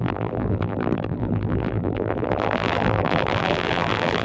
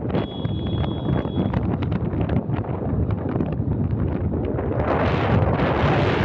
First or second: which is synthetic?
first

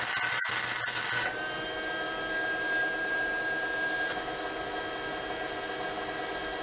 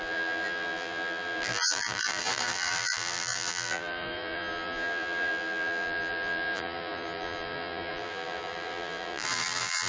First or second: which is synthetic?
second